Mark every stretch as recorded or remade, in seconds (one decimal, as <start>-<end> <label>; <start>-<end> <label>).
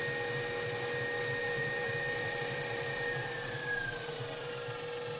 0.0-1.4 recorded; 1.4-4.5 remade; 4.5-5.2 recorded